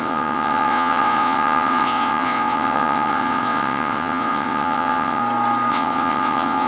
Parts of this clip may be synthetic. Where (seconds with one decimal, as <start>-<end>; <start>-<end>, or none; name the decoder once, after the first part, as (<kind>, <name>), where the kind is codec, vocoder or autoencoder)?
0.0-5.2 (vocoder, WaveNeXt); 5.7-6.7